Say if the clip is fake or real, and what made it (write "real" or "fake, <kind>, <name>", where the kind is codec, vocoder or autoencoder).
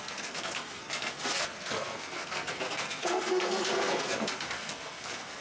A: fake, codec, SNAC